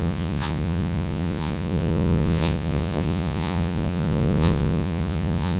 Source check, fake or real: fake